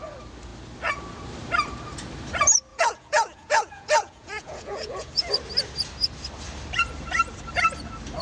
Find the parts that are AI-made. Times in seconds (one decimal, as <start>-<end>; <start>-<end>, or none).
2.7-5.3